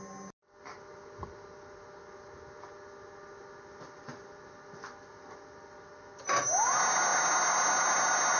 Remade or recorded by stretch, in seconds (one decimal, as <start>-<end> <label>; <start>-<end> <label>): 0.0-8.4 recorded